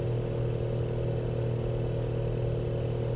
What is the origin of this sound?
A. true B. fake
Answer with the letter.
A